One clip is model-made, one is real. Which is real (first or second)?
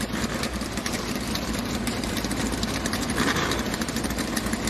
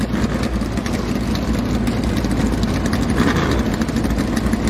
second